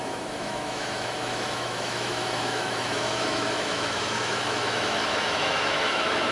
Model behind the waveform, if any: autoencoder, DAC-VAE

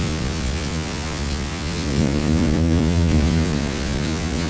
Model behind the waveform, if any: vocoder, Vocos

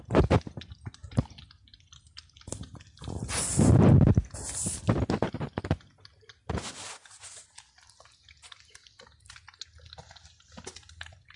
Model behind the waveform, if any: none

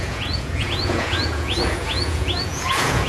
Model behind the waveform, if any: vocoder, Vocos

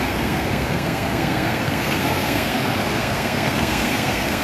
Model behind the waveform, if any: codec, SNAC